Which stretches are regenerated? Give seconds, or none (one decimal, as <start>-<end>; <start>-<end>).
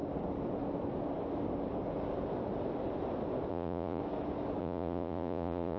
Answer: 3.5-4.0; 4.6-5.8